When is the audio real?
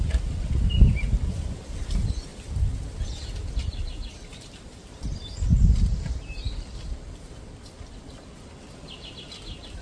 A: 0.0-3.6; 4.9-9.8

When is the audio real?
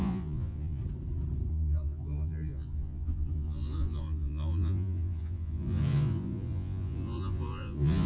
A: 0.8-1.5